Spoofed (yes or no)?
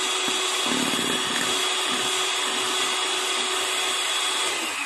no